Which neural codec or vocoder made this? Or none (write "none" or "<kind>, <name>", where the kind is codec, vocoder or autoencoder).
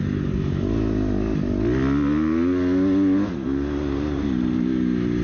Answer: none